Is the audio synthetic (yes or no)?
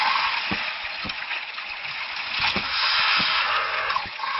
yes